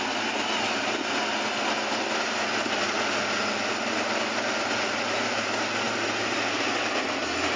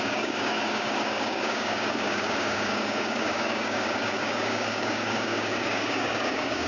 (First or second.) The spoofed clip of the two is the second